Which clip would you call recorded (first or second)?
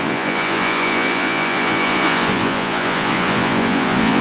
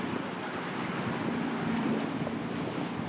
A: second